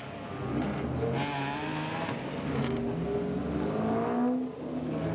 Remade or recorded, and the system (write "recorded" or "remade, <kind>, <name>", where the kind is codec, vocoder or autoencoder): recorded